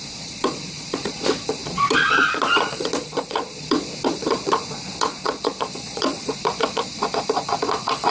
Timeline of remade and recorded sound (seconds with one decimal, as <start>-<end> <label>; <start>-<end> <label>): 0.0-8.1 remade